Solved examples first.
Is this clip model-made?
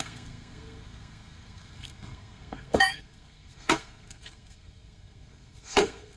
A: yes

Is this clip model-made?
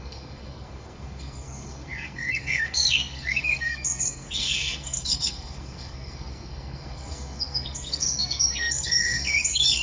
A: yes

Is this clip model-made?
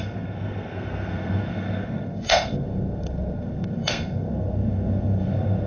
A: yes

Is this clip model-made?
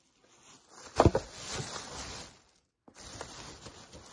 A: no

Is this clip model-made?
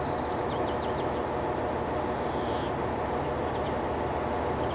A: no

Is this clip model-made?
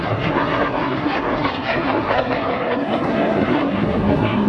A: yes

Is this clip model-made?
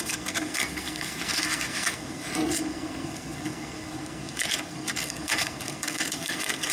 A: yes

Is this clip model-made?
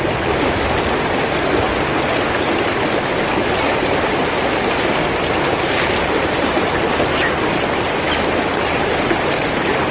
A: no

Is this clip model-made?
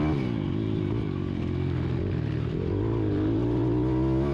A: no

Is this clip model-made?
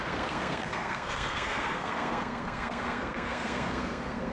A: yes